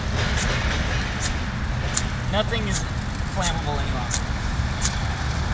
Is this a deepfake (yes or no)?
no